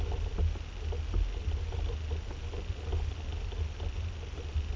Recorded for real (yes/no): yes